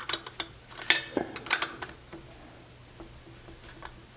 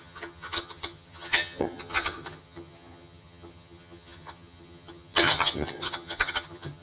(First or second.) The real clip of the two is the first